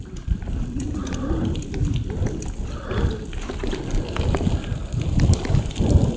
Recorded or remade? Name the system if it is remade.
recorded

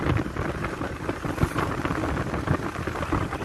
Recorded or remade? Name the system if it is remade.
recorded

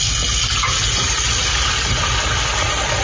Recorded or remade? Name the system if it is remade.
recorded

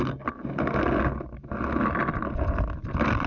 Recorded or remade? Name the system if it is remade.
recorded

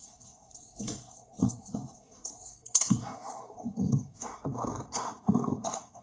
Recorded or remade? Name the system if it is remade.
remade, codec, SNAC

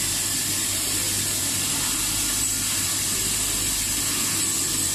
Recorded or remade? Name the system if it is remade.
recorded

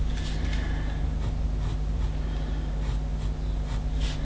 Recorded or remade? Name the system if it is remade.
recorded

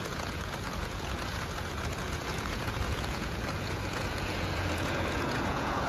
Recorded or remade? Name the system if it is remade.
remade, vocoder, Vocos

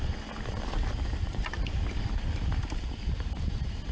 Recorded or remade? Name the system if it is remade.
recorded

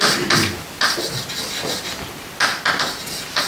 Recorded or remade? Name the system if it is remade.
remade, vocoder, BigVGAN v2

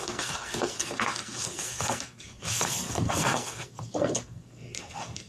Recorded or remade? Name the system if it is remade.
remade, codec, SNAC